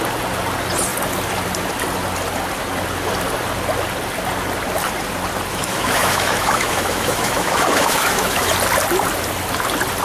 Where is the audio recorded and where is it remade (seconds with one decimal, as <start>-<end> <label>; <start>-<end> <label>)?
0.0-5.5 recorded; 5.5-8.5 remade; 8.5-10.0 recorded